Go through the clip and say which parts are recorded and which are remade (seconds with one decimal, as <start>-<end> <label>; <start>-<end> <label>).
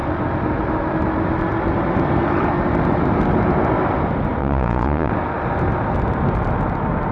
0.0-4.4 recorded; 4.4-5.1 remade; 5.1-7.1 recorded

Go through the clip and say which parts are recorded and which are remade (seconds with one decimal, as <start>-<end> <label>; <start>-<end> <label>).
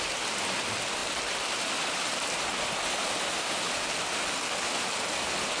0.0-5.6 recorded